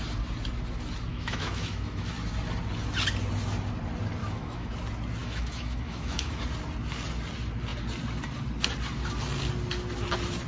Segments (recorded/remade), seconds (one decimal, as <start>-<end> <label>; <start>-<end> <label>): 0.0-1.1 recorded; 1.1-2.1 remade; 2.1-4.2 recorded; 4.2-4.7 remade; 4.7-5.2 recorded; 5.2-6.4 remade; 6.4-10.5 recorded